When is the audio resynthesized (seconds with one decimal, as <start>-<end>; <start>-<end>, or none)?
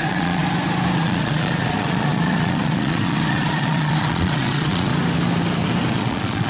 0.0-0.4; 1.0-4.9; 5.9-6.5